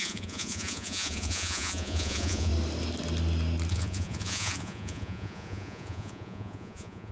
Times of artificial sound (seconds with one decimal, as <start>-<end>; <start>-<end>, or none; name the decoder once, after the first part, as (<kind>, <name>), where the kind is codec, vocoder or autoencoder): 0.0-2.5 (vocoder, Vocos); 3.7-7.1